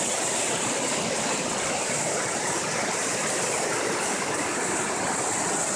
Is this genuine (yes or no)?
yes